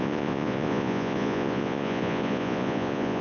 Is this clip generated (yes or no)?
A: yes